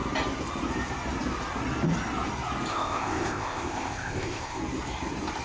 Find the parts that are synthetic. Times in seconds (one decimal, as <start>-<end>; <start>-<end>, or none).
2.7-4.6